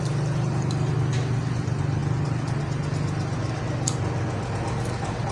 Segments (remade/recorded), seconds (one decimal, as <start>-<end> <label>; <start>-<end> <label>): 0.0-5.3 recorded